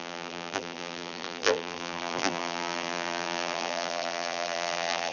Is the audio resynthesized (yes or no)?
yes